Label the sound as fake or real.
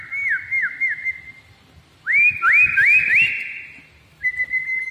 real